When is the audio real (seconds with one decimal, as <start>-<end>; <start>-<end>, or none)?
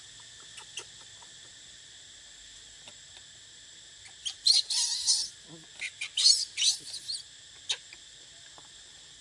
0.0-4.2; 5.3-9.2